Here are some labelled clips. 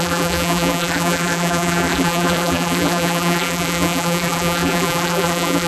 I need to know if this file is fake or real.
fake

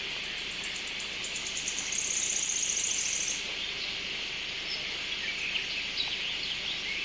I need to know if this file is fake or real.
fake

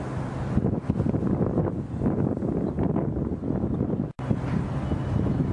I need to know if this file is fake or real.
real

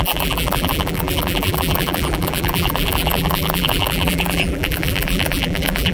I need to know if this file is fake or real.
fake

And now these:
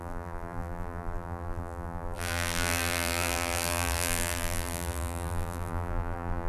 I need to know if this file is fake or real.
fake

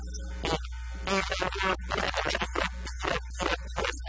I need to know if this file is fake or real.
real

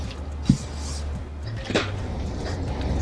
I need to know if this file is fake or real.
real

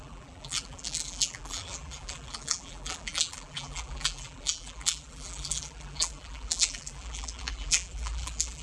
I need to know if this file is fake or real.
fake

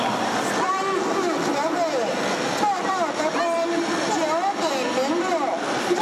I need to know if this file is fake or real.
real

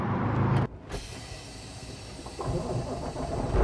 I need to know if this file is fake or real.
real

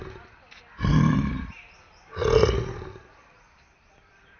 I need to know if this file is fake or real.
fake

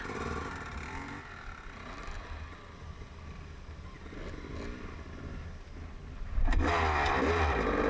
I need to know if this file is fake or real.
real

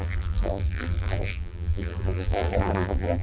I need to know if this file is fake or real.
fake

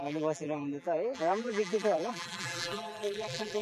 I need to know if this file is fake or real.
fake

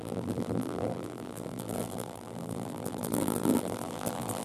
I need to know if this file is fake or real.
fake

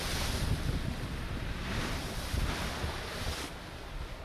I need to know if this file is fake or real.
real